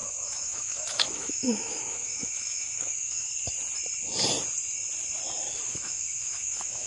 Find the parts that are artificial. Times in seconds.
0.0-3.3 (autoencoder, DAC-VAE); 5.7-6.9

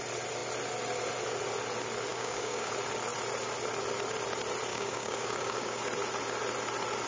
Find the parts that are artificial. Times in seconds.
2.1-2.7 (codec, DAC); 4.7-5.8

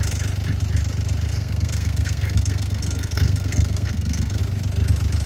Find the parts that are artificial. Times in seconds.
1.3-4.4 (codec, SNAC)

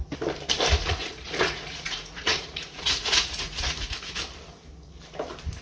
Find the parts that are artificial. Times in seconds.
0.8-4.2 (vocoder, Vocos)